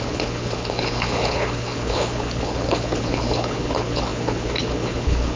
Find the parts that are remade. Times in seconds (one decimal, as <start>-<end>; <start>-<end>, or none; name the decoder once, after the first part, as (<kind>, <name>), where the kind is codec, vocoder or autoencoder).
0.0-5.4 (codec, HILCodec)